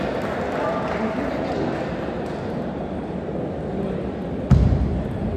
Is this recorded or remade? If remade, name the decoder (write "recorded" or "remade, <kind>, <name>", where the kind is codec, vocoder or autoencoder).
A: recorded